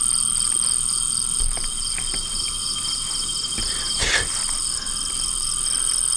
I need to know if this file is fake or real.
real